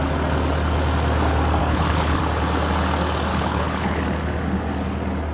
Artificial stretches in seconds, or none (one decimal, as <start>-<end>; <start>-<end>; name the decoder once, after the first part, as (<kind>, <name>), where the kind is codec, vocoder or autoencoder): 1.6-2.2 (codec, HILCodec); 3.3-4.0